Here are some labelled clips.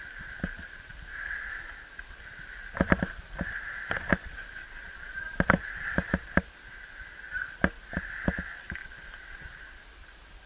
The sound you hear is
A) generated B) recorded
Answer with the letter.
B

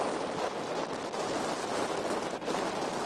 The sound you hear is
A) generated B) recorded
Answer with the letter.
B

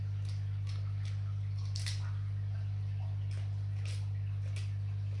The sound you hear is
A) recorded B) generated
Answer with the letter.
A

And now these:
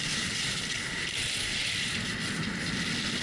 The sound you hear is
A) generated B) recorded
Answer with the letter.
B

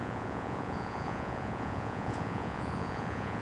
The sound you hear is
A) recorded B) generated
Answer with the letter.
B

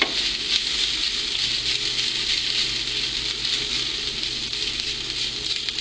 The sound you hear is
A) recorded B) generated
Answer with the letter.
A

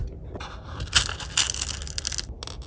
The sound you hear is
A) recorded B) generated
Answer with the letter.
A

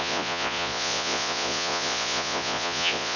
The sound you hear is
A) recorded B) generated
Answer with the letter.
B